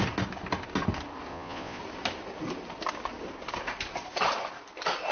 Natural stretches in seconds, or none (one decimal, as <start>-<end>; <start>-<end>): 0.0-1.3; 1.8-5.1